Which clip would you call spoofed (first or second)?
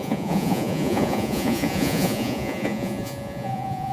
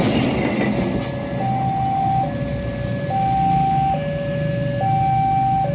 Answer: first